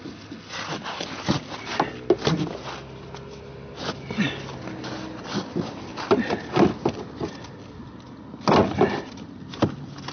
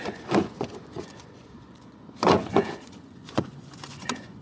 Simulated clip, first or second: second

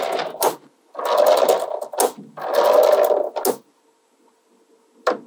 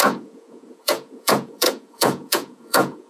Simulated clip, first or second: second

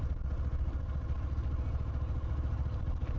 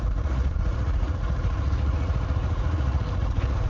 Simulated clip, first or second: second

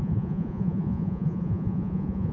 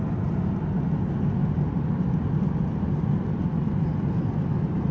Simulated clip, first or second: first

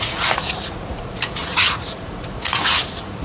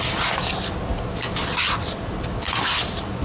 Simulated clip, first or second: first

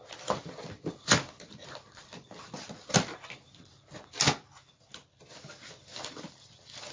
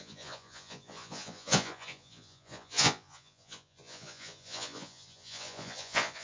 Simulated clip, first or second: second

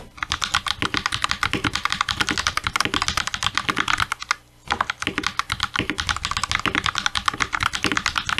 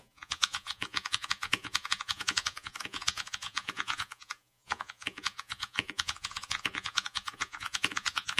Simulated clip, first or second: second